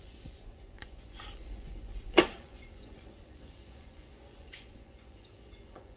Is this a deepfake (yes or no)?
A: yes